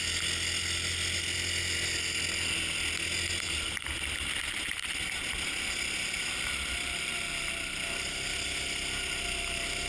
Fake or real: real